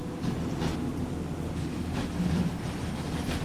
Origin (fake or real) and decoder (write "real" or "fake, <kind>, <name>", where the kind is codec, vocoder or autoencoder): real